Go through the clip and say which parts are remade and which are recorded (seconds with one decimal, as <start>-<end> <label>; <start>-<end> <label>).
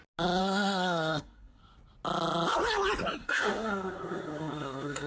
0.0-0.4 recorded; 0.4-1.6 remade; 1.6-3.2 recorded; 3.2-5.1 remade